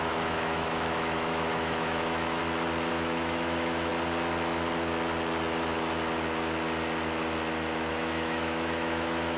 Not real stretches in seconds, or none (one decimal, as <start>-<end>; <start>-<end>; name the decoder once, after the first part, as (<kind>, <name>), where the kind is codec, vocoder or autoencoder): 0.0-2.4 (autoencoder, DAC-VAE); 2.9-3.9; 7.9-9.4